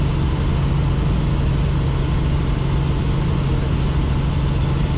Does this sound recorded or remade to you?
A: recorded